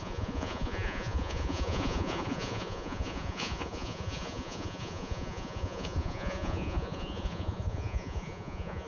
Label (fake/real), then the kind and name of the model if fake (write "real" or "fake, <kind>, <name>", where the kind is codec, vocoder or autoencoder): fake, vocoder, Vocos